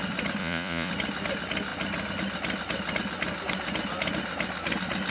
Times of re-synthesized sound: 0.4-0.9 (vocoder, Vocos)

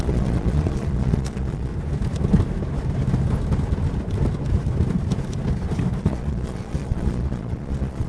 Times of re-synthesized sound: 0.0-1.7 (vocoder, Vocos); 6.0-8.1

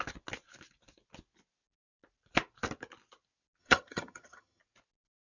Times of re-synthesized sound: 3.6-4.6 (vocoder, HiFi-GAN)

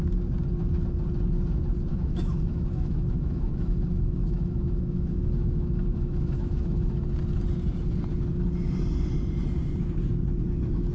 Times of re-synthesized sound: 1.9-6.9 (autoencoder, DAC-VAE)

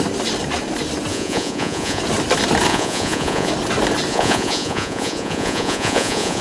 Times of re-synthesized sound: 1.1-2.0 (vocoder, Vocos); 2.7-3.5; 4.1-6.4

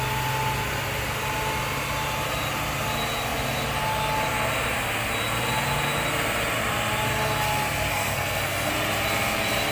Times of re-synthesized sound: 7.9-8.7 (codec, SNAC)

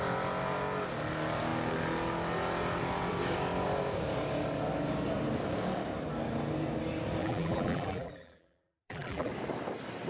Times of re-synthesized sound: 7.2-9.3 (vocoder, BigVGAN v2)